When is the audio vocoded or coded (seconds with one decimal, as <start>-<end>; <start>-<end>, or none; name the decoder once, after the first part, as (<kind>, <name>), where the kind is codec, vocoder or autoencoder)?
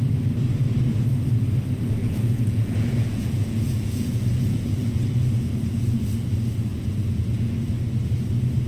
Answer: 2.0-5.9 (vocoder, Vocos); 6.7-7.7